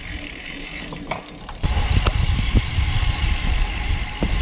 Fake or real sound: fake